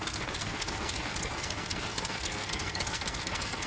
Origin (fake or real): fake